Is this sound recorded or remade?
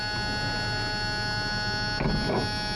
recorded